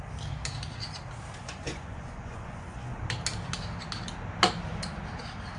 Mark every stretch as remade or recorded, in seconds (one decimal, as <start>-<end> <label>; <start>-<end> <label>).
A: 0.0-1.4 recorded; 1.4-3.0 remade; 3.0-5.6 recorded